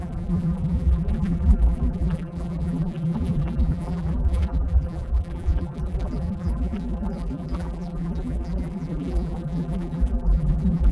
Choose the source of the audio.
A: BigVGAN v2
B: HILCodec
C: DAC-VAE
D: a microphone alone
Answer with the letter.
A